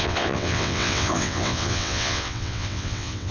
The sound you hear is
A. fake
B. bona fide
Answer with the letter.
A